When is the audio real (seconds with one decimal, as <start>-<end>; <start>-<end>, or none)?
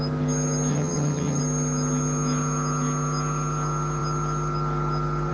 0.0-0.7; 1.4-5.3